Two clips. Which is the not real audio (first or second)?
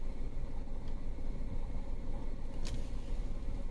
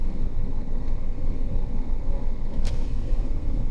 second